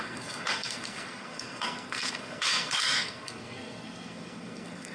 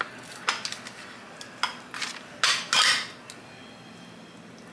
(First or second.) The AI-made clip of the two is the first